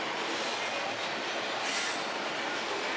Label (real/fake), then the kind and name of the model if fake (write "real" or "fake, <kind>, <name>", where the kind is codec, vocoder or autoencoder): real